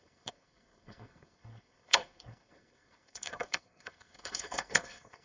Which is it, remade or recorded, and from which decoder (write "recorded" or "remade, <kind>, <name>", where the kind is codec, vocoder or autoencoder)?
remade, codec, SNAC